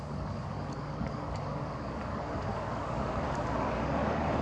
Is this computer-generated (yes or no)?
yes